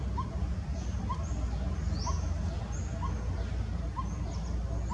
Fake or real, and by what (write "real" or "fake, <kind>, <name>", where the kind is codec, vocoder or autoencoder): real